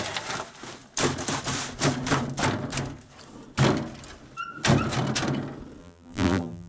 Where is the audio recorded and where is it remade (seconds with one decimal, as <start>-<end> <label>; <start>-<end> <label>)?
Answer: 0.0-5.8 recorded; 5.8-6.7 remade